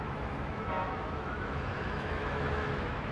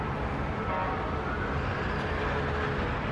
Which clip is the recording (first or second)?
second